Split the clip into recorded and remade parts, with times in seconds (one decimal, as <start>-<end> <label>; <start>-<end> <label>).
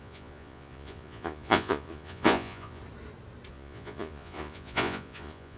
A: 0.0-2.8 remade; 2.8-3.5 recorded; 3.5-5.6 remade